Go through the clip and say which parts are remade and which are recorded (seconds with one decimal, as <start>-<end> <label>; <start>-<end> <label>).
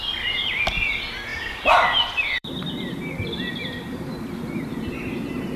0.0-1.3 recorded; 1.3-4.7 remade; 4.7-5.6 recorded